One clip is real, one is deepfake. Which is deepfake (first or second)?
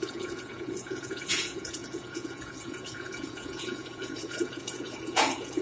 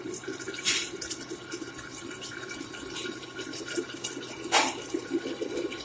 first